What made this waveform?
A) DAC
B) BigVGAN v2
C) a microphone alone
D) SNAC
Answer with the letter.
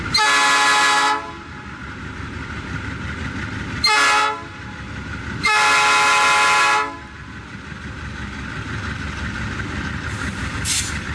C